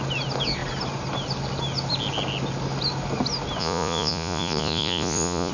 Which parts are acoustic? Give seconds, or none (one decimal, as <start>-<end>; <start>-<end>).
0.0-3.6